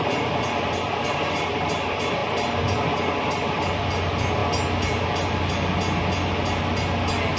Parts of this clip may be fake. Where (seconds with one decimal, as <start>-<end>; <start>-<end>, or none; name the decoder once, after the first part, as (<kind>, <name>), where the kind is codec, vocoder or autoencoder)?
none